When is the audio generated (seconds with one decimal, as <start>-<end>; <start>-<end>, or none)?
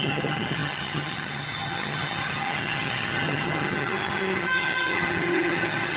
0.0-6.0